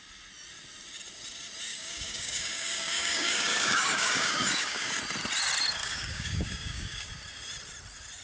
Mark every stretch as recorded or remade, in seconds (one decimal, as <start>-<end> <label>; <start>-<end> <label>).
0.0-1.7 recorded; 1.7-5.0 remade; 5.0-5.8 recorded; 5.8-7.1 remade; 7.1-8.2 recorded

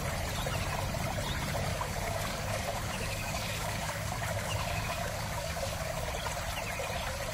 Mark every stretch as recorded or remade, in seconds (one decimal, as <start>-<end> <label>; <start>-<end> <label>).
0.0-1.7 recorded; 1.7-6.1 remade; 6.1-7.3 recorded

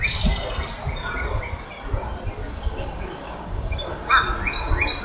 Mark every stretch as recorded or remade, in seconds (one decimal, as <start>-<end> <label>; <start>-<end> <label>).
0.0-2.4 recorded; 2.4-4.1 remade; 4.1-5.0 recorded

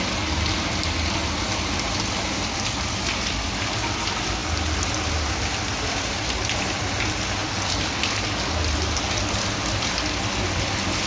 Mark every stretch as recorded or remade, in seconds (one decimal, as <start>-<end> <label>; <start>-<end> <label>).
0.0-11.1 recorded

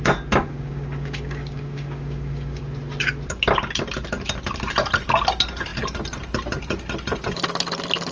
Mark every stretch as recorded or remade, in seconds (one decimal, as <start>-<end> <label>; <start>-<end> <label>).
0.0-0.4 recorded; 0.4-2.6 remade; 2.6-8.1 recorded

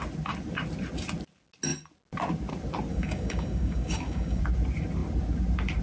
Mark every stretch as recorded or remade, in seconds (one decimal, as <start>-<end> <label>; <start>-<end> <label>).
0.0-2.9 recorded; 2.9-4.4 remade; 4.4-5.8 recorded

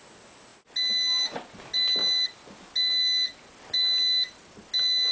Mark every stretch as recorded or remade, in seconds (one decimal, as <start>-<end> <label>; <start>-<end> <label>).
0.0-5.1 recorded